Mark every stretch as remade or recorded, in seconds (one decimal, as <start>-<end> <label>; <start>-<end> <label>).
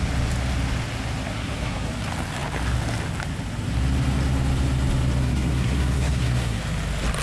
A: 0.0-1.3 recorded; 1.3-1.9 remade; 1.9-5.2 recorded; 5.2-6.6 remade; 6.6-7.2 recorded